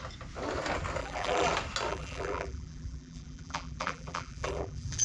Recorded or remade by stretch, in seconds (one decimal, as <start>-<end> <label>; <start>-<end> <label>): 0.0-1.0 recorded; 1.0-1.5 remade; 1.5-1.9 recorded; 1.9-5.0 remade